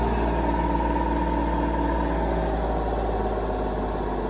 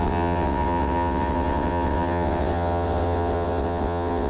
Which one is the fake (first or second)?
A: second